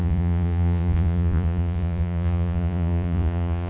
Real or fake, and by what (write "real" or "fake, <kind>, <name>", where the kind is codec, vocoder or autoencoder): fake, vocoder, Vocos